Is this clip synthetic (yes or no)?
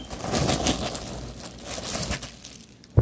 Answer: no